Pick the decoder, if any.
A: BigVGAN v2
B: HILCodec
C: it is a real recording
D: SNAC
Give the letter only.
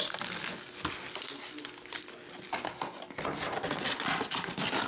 C